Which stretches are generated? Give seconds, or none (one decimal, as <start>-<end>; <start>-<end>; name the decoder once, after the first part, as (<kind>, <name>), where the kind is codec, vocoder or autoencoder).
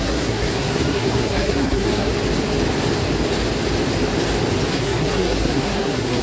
0.0-2.1 (codec, SNAC); 4.7-6.2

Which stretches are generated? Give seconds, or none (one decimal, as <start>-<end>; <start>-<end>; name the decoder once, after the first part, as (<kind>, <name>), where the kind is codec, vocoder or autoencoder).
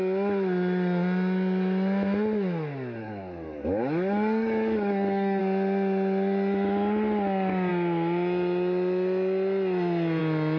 3.0-5.4 (codec, DAC)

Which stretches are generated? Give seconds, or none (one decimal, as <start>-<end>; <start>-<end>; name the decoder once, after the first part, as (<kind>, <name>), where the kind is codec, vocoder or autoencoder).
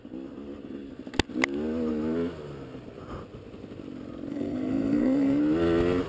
4.3-5.4 (codec, SNAC)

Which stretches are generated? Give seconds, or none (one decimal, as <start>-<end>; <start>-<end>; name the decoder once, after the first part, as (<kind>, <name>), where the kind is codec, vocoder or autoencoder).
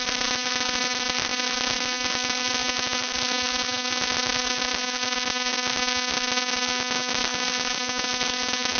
none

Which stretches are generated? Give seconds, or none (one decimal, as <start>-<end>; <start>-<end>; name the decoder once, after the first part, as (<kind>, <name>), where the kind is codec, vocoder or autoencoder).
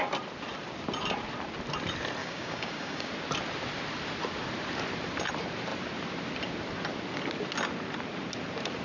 2.2-3.1 (codec, DAC)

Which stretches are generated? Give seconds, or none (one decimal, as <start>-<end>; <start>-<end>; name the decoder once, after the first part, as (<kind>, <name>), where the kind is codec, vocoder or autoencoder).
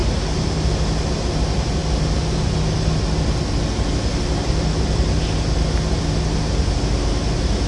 none